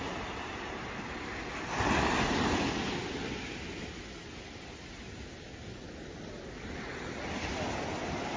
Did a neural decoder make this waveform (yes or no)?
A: no